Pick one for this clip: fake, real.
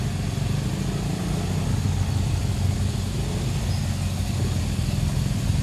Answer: real